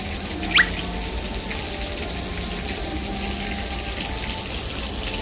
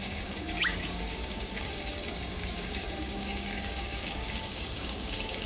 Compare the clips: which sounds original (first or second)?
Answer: first